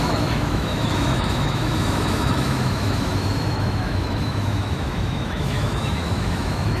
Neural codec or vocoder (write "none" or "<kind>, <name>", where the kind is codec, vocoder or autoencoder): autoencoder, DAC-VAE